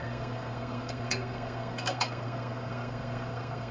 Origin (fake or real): fake